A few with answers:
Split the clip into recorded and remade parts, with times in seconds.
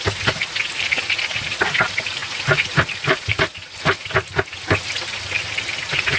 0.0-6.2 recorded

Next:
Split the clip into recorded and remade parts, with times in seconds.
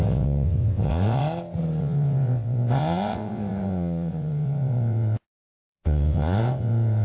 0.0-1.2 remade; 1.2-1.8 recorded; 1.8-7.0 remade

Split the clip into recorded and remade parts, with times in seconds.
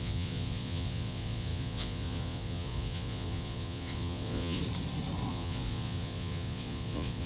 0.0-4.6 remade; 4.6-5.3 recorded; 5.3-7.3 remade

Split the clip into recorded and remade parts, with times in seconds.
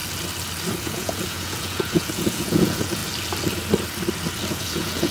0.0-0.8 recorded; 0.8-3.0 remade; 3.0-4.5 recorded; 4.5-5.1 remade